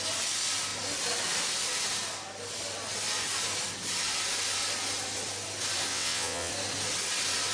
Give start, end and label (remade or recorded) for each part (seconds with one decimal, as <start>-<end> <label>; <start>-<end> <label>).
0.0-5.9 recorded; 5.9-6.5 remade; 6.5-7.5 recorded